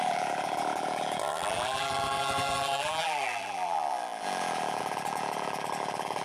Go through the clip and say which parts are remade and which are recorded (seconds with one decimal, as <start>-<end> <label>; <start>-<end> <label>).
0.0-6.2 remade